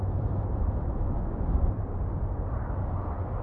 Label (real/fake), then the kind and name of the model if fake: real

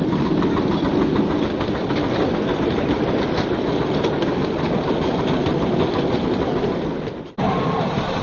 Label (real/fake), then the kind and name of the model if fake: real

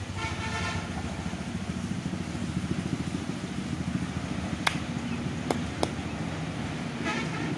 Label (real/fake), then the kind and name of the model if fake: real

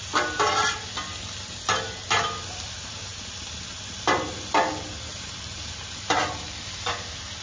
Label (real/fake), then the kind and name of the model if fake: real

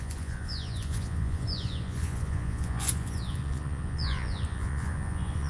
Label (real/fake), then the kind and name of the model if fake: fake, vocoder, Vocos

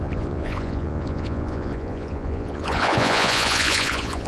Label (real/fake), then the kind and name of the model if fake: fake, vocoder, Vocos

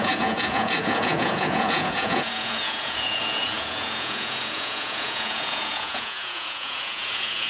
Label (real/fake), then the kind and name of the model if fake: fake, vocoder, Vocos